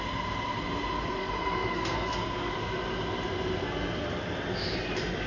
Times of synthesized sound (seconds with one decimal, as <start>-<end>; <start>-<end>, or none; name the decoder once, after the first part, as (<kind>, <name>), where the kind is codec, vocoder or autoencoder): 1.2-2.5 (codec, SNAC)